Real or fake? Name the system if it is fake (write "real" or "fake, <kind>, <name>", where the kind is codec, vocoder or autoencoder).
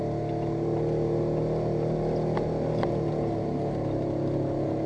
real